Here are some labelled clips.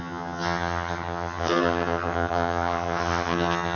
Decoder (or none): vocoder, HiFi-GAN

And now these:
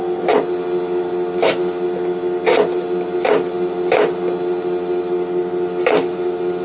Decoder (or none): none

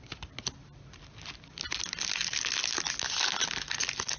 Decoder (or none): none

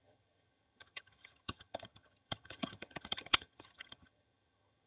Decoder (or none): vocoder, HiFi-GAN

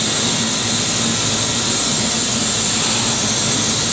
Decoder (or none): none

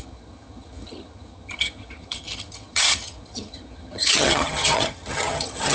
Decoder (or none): vocoder, HiFi-GAN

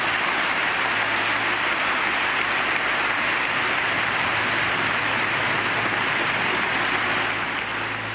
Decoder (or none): none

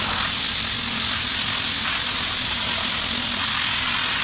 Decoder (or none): none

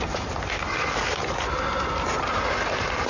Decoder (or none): none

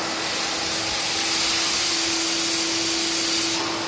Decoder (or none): none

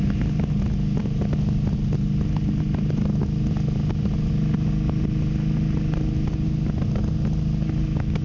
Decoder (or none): none